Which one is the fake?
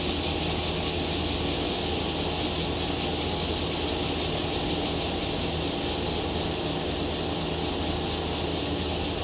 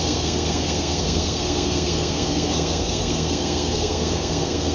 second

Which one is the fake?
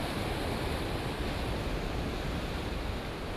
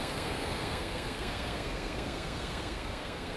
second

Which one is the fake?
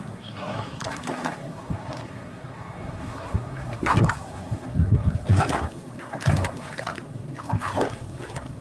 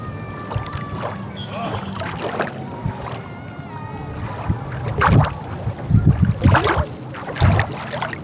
first